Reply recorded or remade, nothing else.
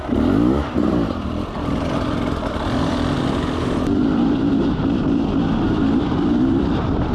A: remade